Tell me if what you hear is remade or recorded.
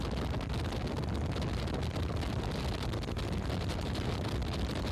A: recorded